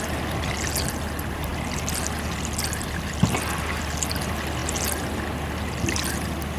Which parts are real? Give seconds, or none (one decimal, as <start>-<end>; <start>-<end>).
0.0-6.6